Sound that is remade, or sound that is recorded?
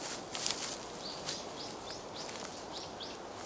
recorded